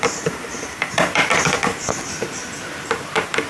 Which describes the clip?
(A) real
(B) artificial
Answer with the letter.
B